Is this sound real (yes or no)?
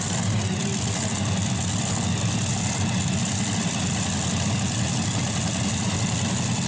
yes